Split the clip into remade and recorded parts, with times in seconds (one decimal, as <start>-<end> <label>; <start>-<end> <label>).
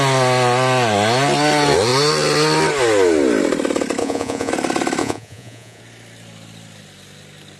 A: 0.0-4.0 recorded; 4.0-4.5 remade; 4.5-5.0 recorded; 5.0-5.8 remade; 5.8-7.6 recorded